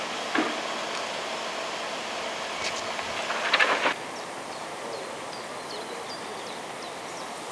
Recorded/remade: recorded